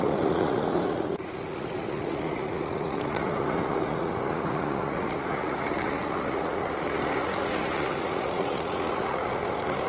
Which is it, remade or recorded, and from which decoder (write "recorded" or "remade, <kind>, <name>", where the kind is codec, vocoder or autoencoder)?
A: remade, vocoder, Vocos